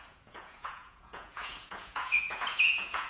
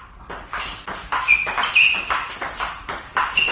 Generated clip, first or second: first